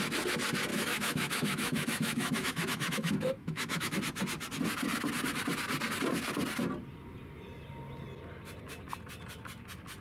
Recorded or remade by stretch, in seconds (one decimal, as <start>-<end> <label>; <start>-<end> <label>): 0.0-0.7 recorded; 0.7-3.9 remade; 3.9-10.0 recorded

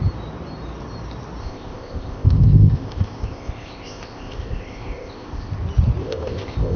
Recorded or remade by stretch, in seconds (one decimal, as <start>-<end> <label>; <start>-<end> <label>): 0.0-1.4 recorded; 1.4-5.5 remade; 5.5-6.0 recorded; 6.0-6.8 remade

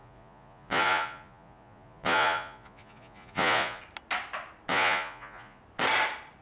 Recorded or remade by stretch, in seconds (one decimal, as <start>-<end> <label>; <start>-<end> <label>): 0.0-3.8 remade; 3.8-4.7 recorded; 4.7-5.6 remade; 5.6-6.4 recorded

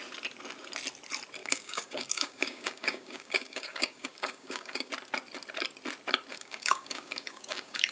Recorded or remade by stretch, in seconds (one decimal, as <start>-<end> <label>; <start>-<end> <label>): 0.0-1.4 recorded; 1.4-4.9 remade; 4.9-6.3 recorded; 6.3-7.9 remade

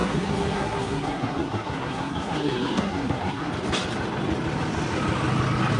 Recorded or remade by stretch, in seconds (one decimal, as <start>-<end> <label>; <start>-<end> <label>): 0.0-3.5 remade; 3.5-5.8 recorded